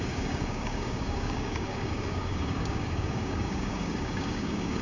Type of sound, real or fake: fake